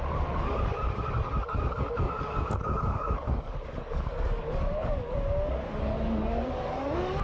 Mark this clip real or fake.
fake